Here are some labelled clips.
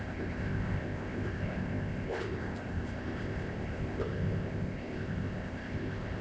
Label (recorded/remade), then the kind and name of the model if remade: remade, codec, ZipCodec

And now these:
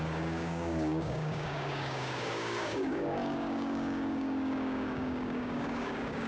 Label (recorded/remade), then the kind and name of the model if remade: remade, codec, DAC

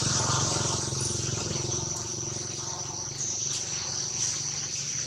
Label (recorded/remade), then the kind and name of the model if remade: recorded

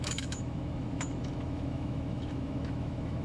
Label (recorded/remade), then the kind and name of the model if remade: remade, autoencoder, DAC-VAE